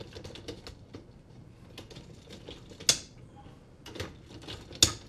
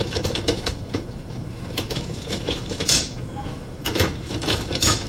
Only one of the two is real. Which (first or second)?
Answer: first